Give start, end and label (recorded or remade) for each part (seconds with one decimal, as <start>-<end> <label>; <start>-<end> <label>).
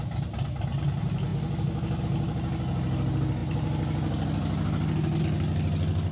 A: 0.0-6.1 recorded